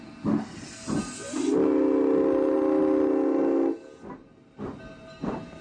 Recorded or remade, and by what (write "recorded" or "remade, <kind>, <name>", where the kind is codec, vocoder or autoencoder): recorded